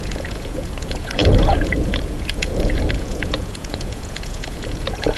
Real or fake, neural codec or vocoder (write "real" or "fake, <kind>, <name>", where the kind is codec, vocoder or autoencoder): fake, vocoder, Vocos